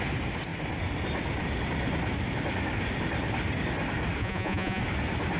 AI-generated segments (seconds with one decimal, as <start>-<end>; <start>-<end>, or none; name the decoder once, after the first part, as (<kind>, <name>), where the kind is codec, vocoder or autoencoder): 4.2-4.8 (vocoder, Vocos)